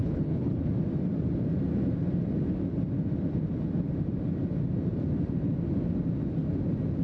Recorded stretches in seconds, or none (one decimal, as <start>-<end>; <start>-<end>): 0.7-7.0